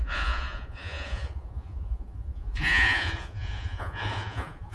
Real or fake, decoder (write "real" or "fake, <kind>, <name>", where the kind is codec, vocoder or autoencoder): fake, vocoder, Vocos